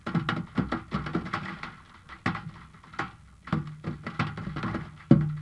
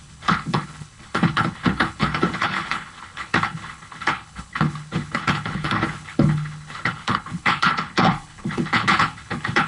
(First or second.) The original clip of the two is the first